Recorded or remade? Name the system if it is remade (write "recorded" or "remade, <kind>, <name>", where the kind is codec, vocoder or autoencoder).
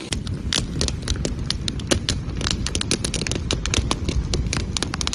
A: recorded